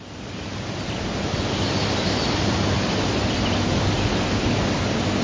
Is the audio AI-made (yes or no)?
no